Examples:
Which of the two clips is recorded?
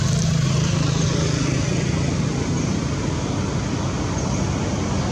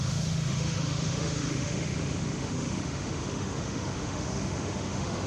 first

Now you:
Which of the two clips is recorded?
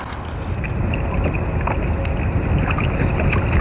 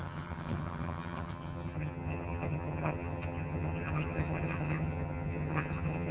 first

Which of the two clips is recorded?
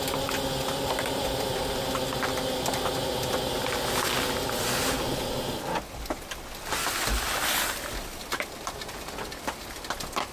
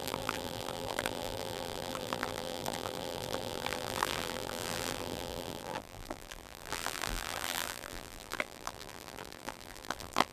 first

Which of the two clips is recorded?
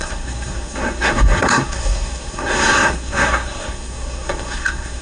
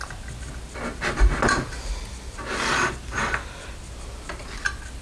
second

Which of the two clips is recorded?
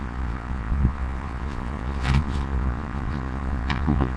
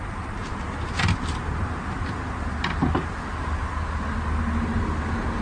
second